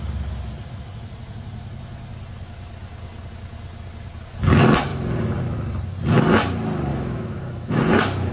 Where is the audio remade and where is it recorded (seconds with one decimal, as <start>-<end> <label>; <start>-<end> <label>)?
0.0-6.9 recorded; 6.9-8.3 remade